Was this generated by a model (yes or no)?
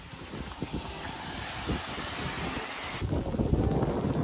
no